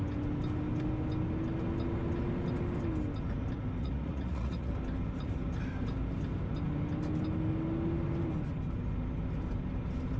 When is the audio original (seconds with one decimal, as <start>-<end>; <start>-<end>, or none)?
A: 0.0-3.8; 4.7-10.2